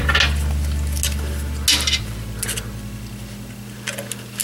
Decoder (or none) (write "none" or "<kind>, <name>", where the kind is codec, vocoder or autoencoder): none